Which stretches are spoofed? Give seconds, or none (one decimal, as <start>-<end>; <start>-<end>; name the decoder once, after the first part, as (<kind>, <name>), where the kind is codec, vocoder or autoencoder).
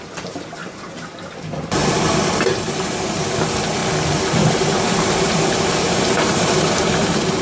0.0-0.6 (vocoder, BigVGAN v2); 1.3-3.8; 4.5-7.4